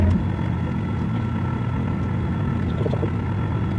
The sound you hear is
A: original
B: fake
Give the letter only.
A